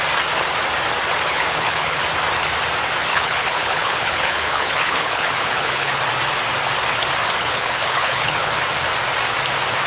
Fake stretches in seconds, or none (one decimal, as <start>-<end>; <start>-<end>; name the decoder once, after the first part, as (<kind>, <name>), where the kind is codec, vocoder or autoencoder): 1.3-2.0 (codec, HILCodec); 3.1-6.0; 7.4-8.5